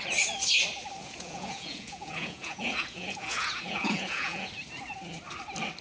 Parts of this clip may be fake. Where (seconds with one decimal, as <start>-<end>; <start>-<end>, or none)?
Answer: 1.0-4.5